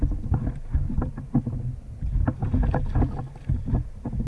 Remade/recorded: recorded